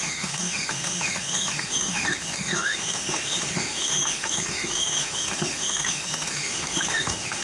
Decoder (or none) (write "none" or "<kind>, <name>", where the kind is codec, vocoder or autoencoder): autoencoder, DAC-VAE